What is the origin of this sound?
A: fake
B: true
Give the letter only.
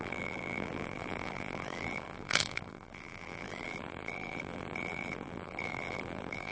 A